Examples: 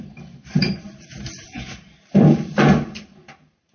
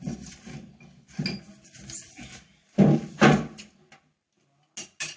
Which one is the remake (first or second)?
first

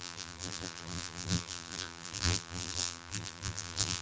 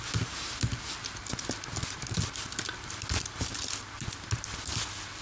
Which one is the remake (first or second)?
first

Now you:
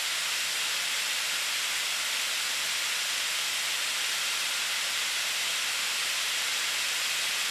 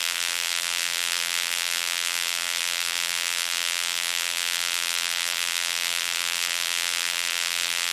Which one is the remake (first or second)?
second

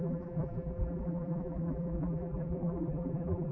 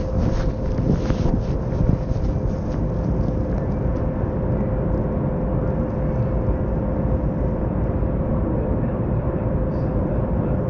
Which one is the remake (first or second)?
first